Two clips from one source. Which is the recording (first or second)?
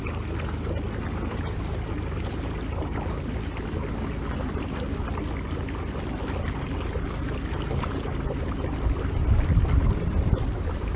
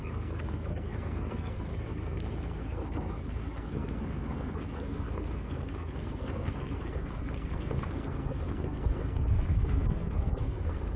first